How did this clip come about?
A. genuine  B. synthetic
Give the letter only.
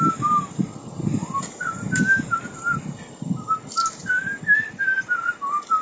A